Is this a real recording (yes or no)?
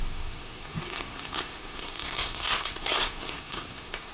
no